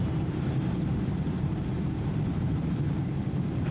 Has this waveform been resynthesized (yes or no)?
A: yes